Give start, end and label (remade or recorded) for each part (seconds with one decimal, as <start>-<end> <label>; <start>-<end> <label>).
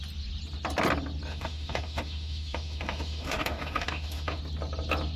0.0-1.3 recorded; 1.3-4.4 remade; 4.4-5.2 recorded